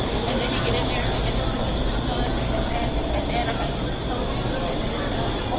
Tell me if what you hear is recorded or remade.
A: recorded